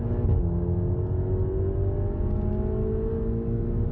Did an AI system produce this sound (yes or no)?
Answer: no